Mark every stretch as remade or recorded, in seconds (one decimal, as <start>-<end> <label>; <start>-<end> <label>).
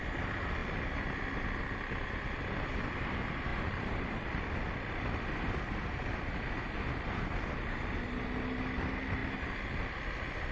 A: 0.0-0.6 recorded; 0.6-1.2 remade; 1.2-3.5 recorded; 3.5-4.5 remade; 4.5-10.5 recorded